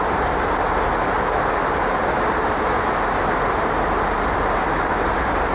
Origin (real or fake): real